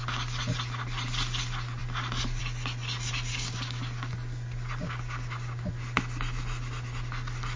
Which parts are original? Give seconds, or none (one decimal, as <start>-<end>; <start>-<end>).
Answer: 0.0-3.3; 4.1-4.8; 5.7-7.6